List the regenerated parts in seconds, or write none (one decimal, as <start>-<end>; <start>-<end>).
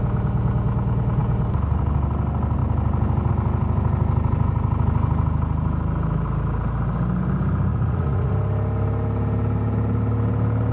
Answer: 7.7-8.3